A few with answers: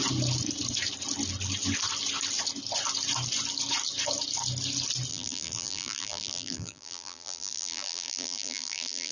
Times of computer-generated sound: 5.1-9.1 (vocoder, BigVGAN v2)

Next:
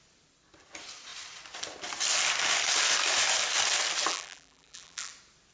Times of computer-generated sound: 4.1-5.1 (vocoder, BigVGAN v2)

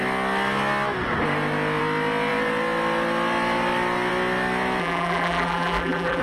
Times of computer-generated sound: 4.8-6.2 (vocoder, BigVGAN v2)

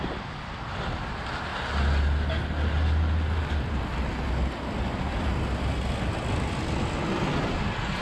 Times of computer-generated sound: none

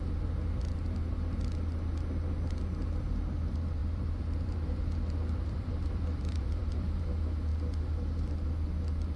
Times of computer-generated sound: 3.8-7.0 (vocoder, BigVGAN v2)

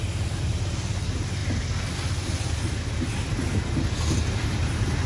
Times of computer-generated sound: none

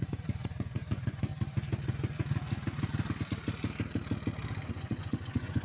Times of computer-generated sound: 0.0-1.3 (vocoder, Vocos); 4.7-5.6

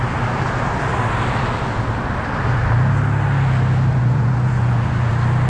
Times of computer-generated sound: 3.9-5.1 (vocoder, Vocos)